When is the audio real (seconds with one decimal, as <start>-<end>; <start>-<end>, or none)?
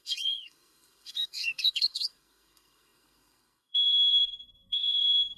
none